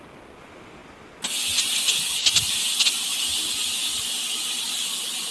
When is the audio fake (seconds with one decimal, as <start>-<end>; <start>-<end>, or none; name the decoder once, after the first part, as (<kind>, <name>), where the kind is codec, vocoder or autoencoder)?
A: none